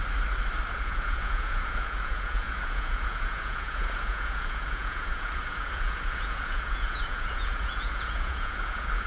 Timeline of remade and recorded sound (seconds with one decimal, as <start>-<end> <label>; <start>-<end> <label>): 0.0-0.7 recorded; 0.7-9.1 remade